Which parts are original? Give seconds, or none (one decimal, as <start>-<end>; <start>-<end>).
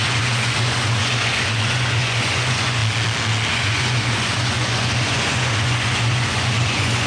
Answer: 2.8-3.5